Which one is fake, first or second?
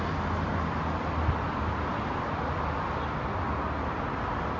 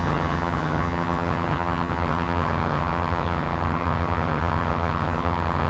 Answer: second